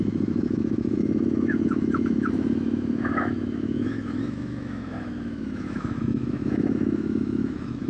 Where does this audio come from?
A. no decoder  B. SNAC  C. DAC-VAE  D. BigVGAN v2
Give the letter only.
C